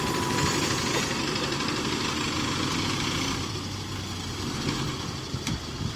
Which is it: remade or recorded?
recorded